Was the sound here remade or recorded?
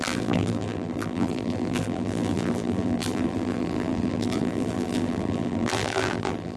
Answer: remade